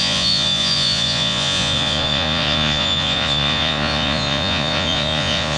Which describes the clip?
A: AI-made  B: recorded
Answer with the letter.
A